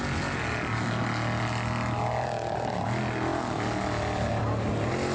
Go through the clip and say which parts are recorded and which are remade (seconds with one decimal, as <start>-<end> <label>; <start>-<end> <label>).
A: 0.0-5.1 recorded